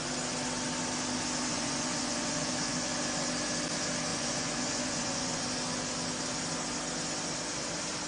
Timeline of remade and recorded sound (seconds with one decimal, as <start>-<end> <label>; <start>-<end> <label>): 0.0-1.5 recorded; 1.5-2.9 remade; 2.9-4.1 recorded; 4.1-5.4 remade; 5.4-8.1 recorded